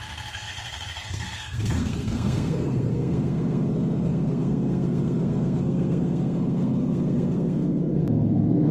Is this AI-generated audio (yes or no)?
yes